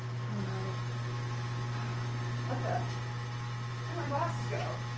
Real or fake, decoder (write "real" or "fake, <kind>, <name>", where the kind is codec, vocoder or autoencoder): real